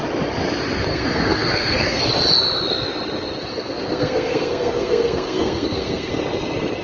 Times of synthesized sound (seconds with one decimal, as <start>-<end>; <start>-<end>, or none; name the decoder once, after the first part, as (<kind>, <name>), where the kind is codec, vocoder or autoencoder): 0.9-2.0 (codec, SNAC); 3.5-6.1